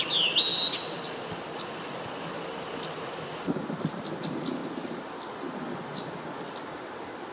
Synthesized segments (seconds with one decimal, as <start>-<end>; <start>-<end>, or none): none